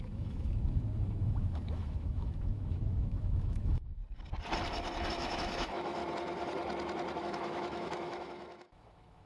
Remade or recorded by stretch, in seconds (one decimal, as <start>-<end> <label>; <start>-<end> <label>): 0.0-4.0 remade; 4.0-5.1 recorded; 5.1-6.0 remade; 6.0-7.2 recorded; 7.2-9.3 remade